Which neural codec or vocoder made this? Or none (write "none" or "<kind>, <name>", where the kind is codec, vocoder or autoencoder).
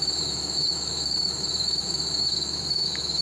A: autoencoder, DAC-VAE